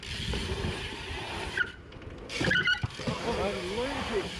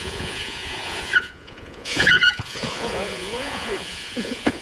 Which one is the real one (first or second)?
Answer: first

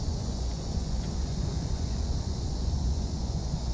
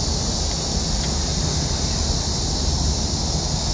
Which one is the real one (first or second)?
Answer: second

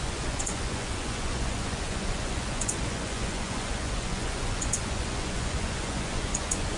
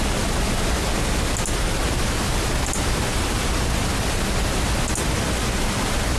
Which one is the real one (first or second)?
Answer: second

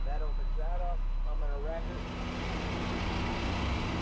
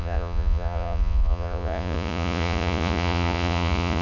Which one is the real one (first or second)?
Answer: first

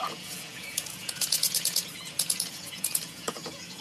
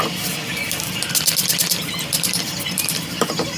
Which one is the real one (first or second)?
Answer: second